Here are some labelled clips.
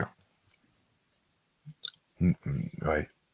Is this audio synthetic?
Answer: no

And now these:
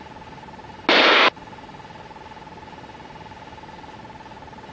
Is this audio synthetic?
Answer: no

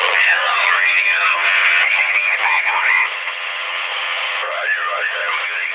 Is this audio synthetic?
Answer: yes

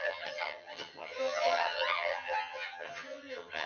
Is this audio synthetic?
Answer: yes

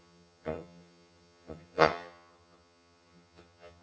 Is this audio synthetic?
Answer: yes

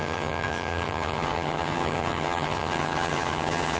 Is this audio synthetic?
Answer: yes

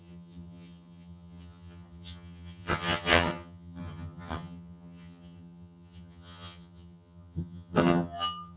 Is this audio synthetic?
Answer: yes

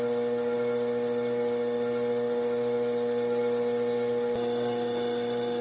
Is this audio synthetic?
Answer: no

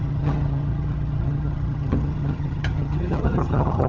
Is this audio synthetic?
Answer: yes